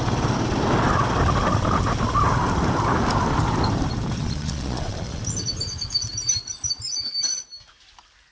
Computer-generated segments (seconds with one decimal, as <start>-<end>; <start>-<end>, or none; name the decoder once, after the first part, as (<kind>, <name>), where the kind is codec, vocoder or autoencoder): 4.2-5.2 (vocoder, Vocos)

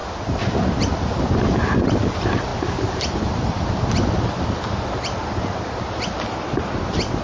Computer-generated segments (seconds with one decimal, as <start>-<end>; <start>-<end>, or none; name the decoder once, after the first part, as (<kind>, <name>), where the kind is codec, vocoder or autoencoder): none

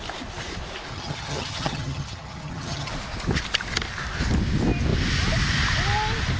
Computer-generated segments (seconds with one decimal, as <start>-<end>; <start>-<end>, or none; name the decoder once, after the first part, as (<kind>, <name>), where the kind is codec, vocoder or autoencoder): 0.9-2.9 (vocoder, HiFi-GAN)

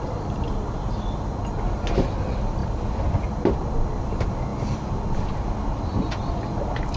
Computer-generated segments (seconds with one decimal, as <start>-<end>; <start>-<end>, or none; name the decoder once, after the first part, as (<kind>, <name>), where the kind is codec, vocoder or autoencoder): 2.6-4.0 (vocoder, BigVGAN v2)

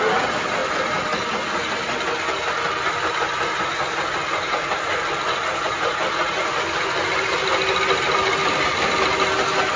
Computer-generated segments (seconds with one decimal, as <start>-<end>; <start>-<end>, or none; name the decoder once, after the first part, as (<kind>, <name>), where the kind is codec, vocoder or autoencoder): none

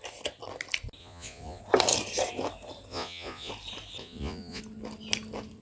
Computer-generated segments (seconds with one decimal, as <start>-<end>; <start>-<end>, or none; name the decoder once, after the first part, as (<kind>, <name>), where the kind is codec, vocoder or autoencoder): 1.0-1.6 (vocoder, Vocos); 2.9-3.5; 4.0-4.6

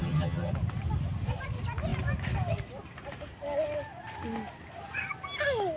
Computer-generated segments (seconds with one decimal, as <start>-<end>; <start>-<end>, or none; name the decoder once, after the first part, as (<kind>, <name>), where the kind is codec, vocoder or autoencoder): 0.0-0.5 (vocoder, HiFi-GAN)

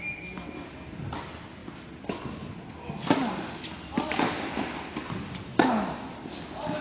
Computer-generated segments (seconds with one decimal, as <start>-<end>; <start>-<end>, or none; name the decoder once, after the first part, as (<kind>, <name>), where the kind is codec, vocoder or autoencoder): none